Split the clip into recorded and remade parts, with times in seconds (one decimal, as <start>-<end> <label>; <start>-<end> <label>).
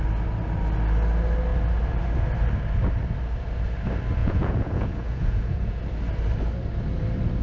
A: 0.0-4.2 recorded; 4.2-5.8 remade; 5.8-7.4 recorded